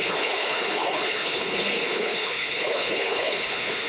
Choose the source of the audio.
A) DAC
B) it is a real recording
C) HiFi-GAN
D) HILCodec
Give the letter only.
D